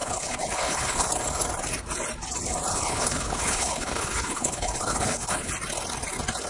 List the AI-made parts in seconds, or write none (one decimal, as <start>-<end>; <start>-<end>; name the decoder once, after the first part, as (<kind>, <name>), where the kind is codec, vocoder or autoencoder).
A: 0.0-1.1 (codec, HILCodec); 2.7-5.5